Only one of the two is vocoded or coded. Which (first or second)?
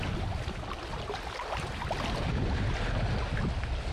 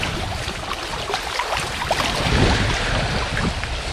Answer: second